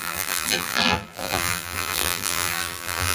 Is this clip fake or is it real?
fake